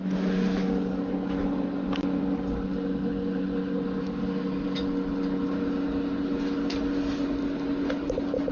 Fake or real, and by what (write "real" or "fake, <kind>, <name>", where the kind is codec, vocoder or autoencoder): real